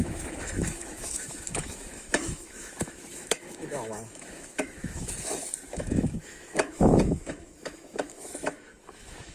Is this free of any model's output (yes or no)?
no